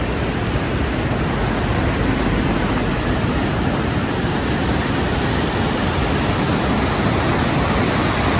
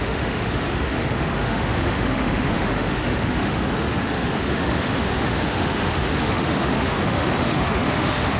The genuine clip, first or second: first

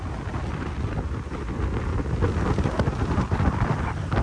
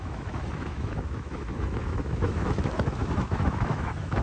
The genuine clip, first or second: first